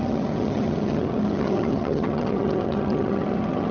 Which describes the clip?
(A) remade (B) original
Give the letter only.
A